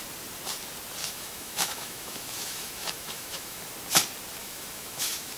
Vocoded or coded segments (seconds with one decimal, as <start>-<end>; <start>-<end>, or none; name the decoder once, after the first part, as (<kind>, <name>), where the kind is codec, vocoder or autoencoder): 1.0-3.6 (autoencoder, DAC-VAE); 4.4-5.4